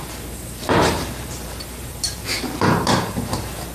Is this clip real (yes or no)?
no